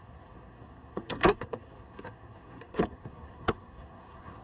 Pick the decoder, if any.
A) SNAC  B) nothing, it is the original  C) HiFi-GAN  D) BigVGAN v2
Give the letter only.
A